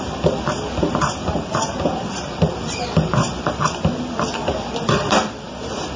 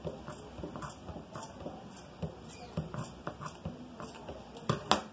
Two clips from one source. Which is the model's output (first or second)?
first